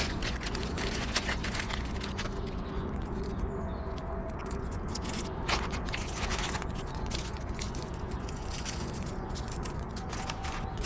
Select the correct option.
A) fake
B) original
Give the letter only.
A